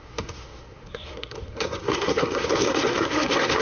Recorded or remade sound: remade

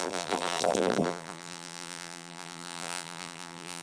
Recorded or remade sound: remade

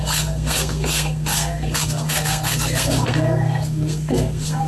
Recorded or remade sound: remade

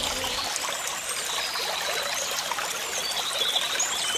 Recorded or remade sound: recorded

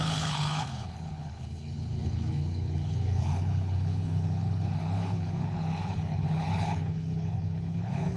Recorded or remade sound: remade